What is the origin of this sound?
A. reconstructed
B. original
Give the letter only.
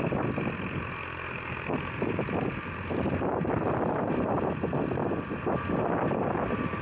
B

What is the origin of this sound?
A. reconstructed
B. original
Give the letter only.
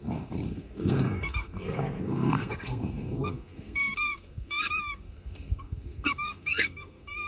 A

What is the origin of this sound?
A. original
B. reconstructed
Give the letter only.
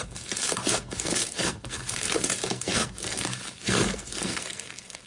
B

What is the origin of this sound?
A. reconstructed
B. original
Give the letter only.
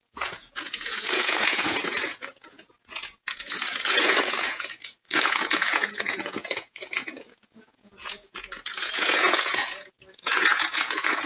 A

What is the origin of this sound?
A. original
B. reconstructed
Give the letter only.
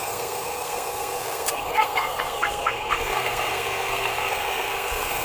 B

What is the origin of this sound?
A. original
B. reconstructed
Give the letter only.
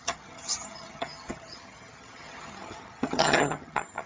B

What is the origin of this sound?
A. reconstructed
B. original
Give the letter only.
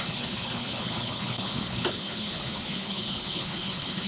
A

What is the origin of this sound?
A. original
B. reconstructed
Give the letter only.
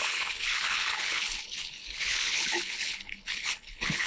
B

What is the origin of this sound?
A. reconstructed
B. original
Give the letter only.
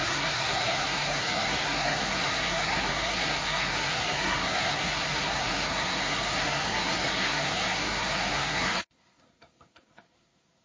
A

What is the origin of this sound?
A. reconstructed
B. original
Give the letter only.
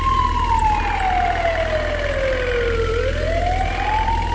B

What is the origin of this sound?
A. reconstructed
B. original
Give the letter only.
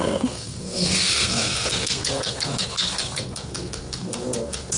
A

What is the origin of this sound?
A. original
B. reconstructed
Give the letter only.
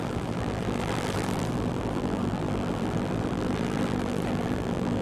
B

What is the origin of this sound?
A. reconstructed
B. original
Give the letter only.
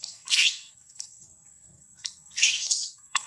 A